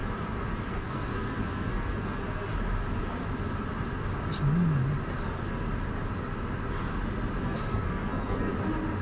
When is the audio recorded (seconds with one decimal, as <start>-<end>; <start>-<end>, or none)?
0.0-0.7; 2.5-7.4; 8.5-9.0